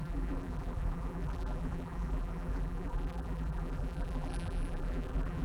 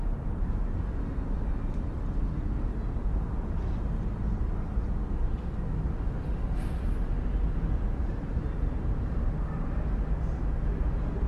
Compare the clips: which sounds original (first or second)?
second